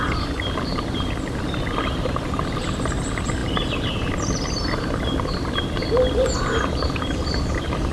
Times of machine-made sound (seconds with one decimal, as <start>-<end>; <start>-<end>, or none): none